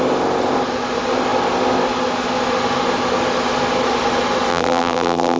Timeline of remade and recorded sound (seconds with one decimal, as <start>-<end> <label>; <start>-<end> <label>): 0.0-4.5 recorded; 4.5-5.4 remade